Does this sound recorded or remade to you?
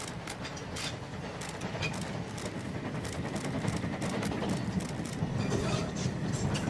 recorded